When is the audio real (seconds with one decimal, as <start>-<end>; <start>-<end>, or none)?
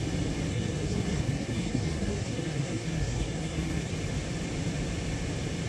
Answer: 0.0-0.5; 3.9-5.7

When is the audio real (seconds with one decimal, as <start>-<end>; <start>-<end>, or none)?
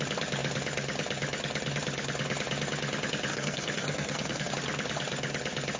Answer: 0.0-3.3; 4.5-5.8